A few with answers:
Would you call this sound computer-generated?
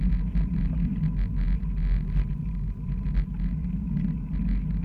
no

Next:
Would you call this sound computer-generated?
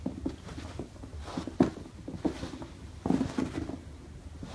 no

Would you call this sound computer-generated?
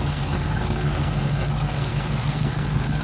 yes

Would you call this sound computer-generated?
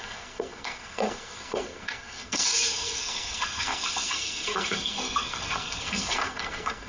yes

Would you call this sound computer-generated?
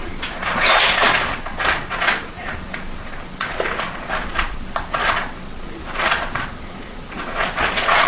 yes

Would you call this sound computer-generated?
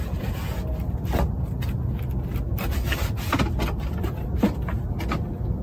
no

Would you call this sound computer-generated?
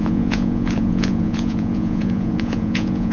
yes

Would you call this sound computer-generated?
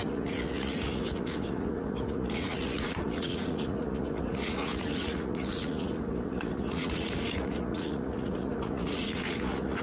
yes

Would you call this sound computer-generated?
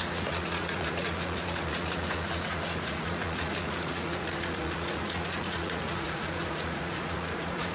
yes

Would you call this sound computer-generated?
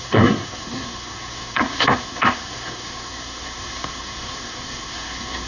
yes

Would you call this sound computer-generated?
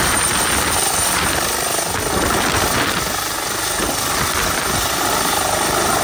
no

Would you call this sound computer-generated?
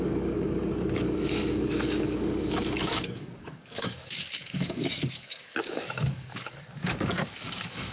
yes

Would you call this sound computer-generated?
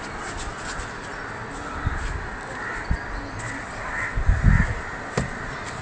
no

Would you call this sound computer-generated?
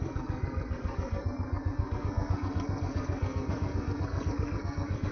yes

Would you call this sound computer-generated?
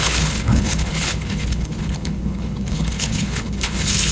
yes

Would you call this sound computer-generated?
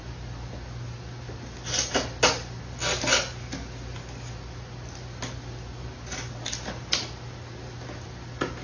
no